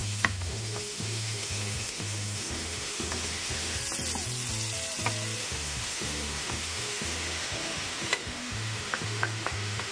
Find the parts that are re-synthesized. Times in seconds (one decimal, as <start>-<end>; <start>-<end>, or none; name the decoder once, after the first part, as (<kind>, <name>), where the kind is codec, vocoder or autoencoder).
0.0-3.8 (autoencoder, DAC-VAE); 5.4-9.9